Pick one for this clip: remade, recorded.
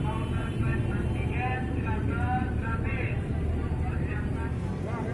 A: remade